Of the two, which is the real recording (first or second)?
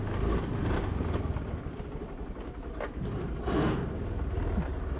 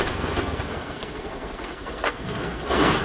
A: first